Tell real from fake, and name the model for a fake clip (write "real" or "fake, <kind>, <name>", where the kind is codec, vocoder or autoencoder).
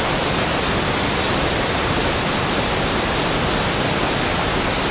real